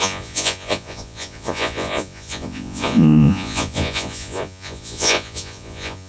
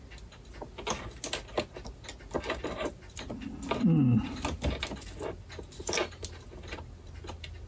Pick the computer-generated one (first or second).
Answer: first